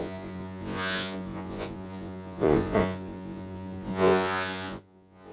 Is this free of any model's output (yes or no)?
no